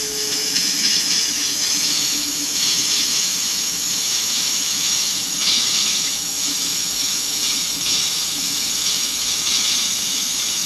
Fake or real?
fake